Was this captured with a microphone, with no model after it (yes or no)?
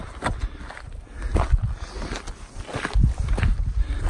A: yes